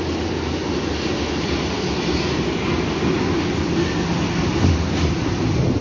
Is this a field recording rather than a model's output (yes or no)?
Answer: yes